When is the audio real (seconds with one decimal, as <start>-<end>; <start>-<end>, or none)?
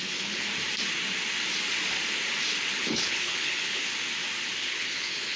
0.5-2.8; 3.8-4.6